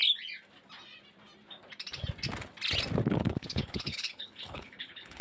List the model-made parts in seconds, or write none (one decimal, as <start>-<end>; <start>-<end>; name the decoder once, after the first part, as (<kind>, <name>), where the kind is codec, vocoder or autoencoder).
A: 3.1-5.2 (codec, HILCodec)